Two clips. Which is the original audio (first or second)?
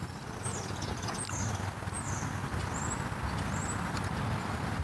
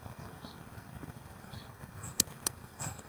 first